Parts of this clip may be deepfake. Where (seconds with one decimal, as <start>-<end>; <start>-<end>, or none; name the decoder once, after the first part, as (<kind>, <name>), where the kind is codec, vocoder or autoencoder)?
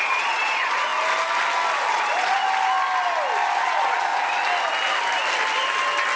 0.0-0.9 (vocoder, Vocos); 1.9-2.4; 3.6-4.1